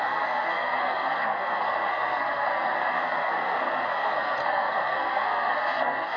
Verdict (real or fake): fake